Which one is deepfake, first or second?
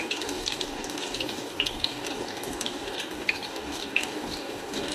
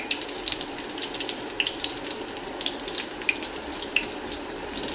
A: first